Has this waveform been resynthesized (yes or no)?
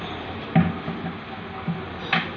no